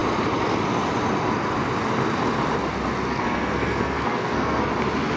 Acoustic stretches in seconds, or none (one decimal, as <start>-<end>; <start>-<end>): 0.0-3.1; 4.7-5.2